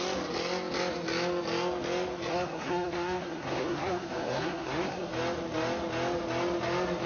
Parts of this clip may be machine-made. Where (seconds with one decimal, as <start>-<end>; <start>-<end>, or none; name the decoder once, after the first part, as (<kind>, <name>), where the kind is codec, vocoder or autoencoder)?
2.3-5.1 (codec, SNAC)